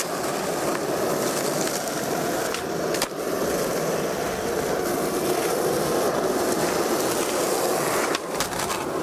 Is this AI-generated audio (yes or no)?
no